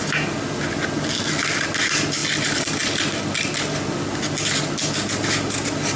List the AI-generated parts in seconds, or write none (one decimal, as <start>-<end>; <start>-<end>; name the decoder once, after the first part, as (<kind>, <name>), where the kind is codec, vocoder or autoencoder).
none